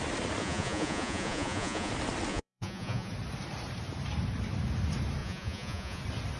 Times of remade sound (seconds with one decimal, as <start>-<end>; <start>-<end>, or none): 0.4-1.9; 2.3-3.1; 5.2-6.0